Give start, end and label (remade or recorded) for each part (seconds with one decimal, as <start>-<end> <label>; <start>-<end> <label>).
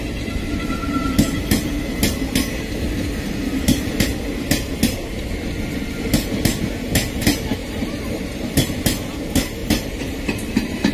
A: 0.0-7.6 recorded; 7.6-8.8 remade; 8.8-9.6 recorded; 9.6-10.9 remade